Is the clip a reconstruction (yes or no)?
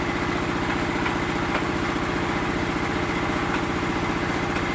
no